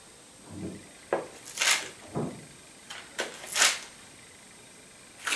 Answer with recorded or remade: recorded